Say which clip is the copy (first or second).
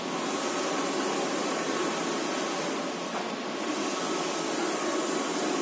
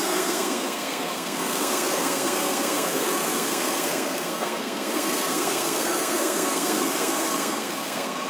second